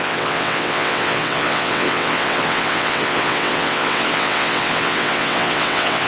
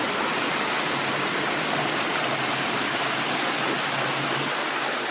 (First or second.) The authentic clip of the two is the second